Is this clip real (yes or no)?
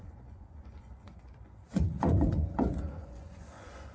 no